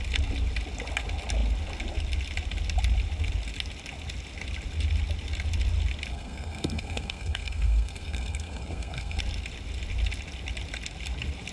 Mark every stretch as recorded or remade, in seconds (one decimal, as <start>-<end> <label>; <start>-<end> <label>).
0.0-6.1 recorded; 6.1-9.2 remade; 9.2-11.5 recorded